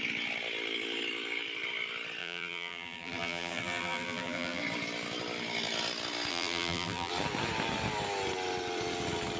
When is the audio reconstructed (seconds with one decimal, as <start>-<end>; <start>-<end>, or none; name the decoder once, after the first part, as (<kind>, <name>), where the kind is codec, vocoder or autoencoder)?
2.2-4.6 (vocoder, BigVGAN v2); 6.3-7.1